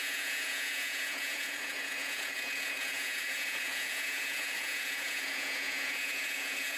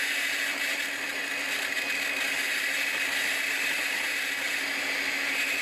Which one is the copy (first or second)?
first